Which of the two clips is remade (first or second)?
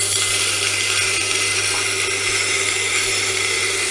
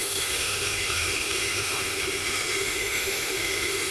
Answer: second